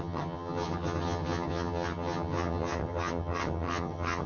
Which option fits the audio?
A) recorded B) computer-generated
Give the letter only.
B